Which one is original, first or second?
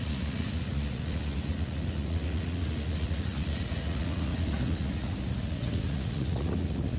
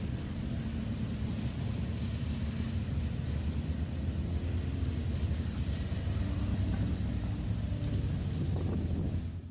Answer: second